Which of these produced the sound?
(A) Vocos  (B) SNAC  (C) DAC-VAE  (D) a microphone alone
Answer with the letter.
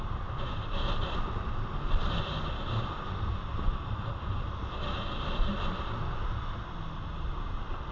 D